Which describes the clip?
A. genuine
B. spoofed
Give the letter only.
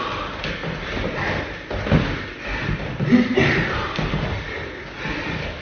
A